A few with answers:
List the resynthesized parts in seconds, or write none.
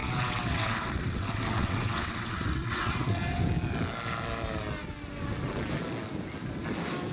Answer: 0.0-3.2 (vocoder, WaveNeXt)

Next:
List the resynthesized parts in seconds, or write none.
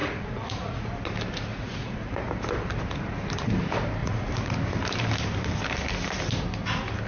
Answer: 0.0-0.9 (vocoder, Vocos); 1.5-2.3; 4.0-4.5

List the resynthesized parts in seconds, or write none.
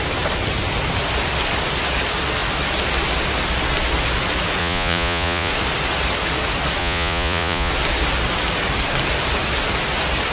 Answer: 4.6-5.5 (vocoder, Vocos); 6.8-7.7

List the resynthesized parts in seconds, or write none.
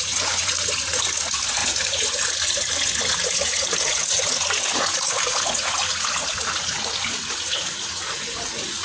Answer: 0.0-8.8 (vocoder, Vocos)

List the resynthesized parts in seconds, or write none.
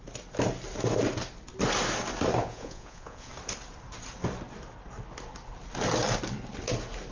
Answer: 2.4-3.3 (vocoder, Vocos)